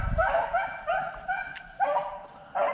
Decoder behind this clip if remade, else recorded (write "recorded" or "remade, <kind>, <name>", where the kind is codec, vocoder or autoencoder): recorded